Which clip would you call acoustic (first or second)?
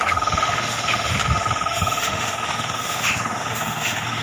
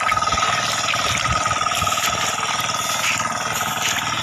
second